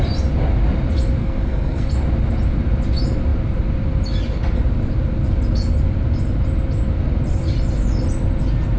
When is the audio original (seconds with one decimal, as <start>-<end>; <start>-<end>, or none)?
0.0-1.2; 1.9-8.8